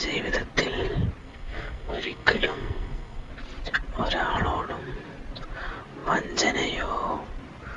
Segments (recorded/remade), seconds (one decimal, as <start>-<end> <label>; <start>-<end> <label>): 0.0-1.2 recorded; 1.2-3.3 remade; 3.3-7.8 recorded